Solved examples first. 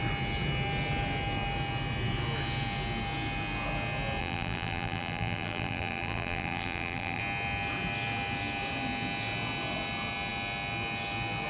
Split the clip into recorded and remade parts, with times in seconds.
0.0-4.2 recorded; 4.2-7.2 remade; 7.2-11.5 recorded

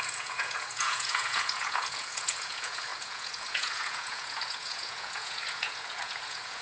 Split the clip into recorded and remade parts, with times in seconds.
0.0-6.6 remade

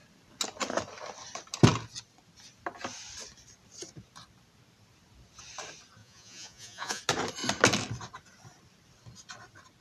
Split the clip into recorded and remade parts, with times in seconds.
0.0-6.0 recorded; 6.0-7.0 remade; 7.0-9.8 recorded

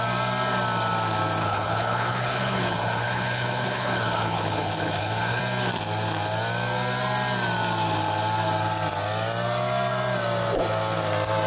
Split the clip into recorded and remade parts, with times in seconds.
0.0-1.4 recorded; 1.4-5.4 remade; 5.4-11.5 recorded